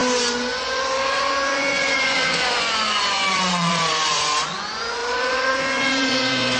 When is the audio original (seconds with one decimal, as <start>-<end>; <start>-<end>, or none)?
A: 0.0-0.5